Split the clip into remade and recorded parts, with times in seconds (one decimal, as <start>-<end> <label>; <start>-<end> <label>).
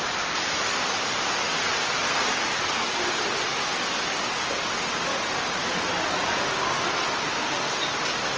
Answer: 0.0-8.4 recorded